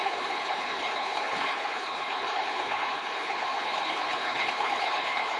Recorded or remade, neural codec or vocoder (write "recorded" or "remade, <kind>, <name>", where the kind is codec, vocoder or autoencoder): remade, codec, HILCodec